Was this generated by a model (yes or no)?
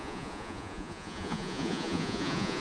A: yes